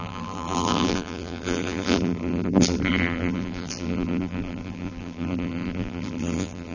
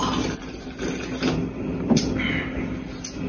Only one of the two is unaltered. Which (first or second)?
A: second